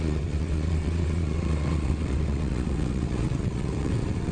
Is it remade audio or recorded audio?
remade